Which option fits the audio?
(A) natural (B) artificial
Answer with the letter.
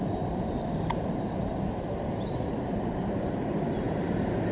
B